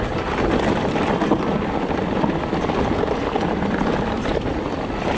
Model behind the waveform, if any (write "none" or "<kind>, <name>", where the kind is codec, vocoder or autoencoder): vocoder, BigVGAN v2